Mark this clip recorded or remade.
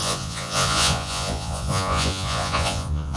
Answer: remade